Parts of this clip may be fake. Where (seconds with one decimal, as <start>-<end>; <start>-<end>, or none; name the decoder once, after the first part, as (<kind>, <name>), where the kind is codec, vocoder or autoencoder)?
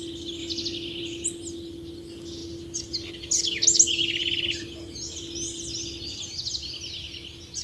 none